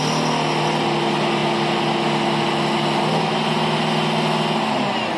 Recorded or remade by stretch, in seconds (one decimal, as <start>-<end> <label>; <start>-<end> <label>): 0.0-5.2 recorded